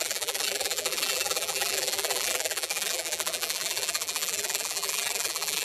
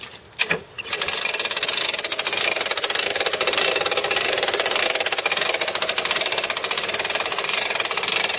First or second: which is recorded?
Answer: second